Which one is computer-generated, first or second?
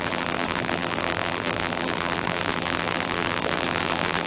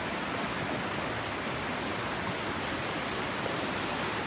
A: first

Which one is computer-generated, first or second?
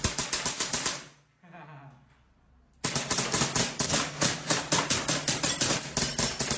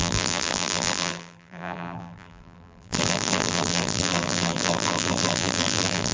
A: second